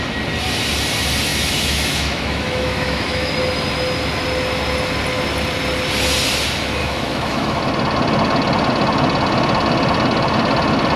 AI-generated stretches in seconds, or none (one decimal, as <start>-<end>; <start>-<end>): 1.3-3.3; 6.8-7.6